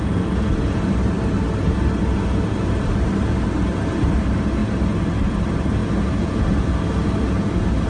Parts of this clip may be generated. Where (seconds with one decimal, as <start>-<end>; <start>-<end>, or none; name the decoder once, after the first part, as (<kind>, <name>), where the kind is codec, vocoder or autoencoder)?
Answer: 0.0-7.9 (vocoder, BigVGAN v2)